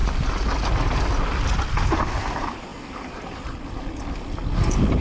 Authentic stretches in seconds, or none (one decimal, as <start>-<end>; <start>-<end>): 0.0-5.0